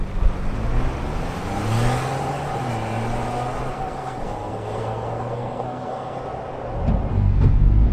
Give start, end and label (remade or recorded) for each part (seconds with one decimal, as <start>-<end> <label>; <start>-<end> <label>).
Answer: 0.0-3.7 recorded; 3.7-6.2 remade; 6.2-7.1 recorded; 7.1-7.9 remade

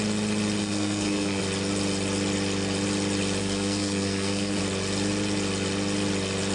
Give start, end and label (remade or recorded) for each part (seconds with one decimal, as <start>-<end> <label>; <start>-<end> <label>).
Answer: 0.0-0.6 recorded; 0.6-1.4 remade; 1.4-3.4 recorded; 3.4-4.6 remade; 4.6-6.5 recorded

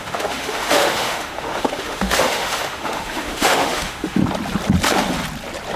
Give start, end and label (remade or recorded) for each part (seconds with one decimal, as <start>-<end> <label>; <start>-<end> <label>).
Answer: 0.0-4.2 remade; 4.2-5.8 recorded

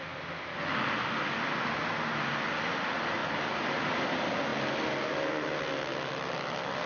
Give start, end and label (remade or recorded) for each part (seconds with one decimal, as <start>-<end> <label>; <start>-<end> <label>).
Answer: 0.0-3.2 recorded; 3.2-3.8 remade; 3.8-6.9 recorded